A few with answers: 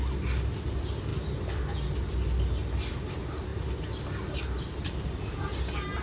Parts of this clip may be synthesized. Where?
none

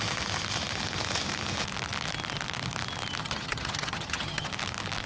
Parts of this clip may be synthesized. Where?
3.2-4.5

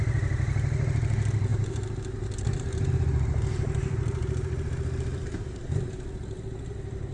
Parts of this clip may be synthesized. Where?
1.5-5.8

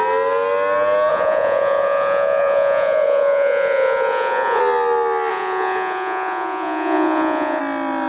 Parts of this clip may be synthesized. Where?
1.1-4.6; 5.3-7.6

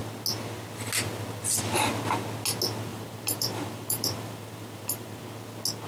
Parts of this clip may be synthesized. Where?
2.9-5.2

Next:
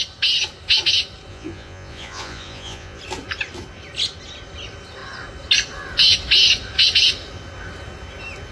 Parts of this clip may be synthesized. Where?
1.3-3.0

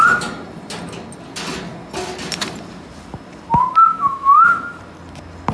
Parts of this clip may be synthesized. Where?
3.9-4.8